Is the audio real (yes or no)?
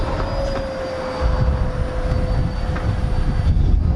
yes